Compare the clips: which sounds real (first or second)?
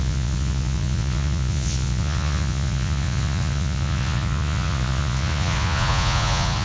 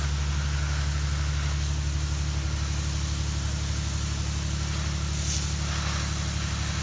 second